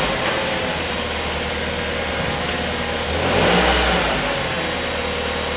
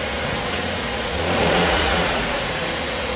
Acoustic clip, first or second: first